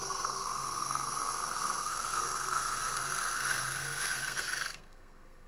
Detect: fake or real fake